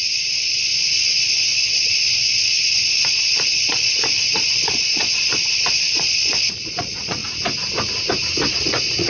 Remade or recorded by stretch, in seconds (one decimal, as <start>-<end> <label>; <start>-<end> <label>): 0.0-7.2 remade; 7.2-8.5 recorded; 8.5-9.1 remade